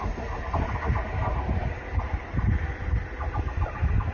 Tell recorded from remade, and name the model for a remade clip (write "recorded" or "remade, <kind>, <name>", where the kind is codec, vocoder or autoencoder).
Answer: recorded